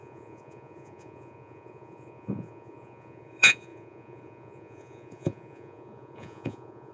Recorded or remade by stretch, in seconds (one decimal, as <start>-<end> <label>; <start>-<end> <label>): 0.0-6.9 remade